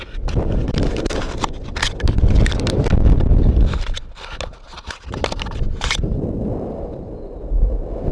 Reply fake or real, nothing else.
real